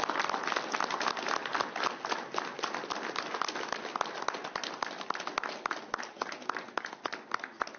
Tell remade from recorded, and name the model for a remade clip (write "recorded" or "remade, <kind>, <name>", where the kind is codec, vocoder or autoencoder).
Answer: recorded